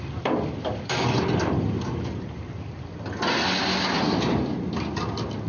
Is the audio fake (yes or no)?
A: no